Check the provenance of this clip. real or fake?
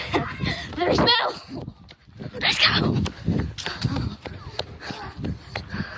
real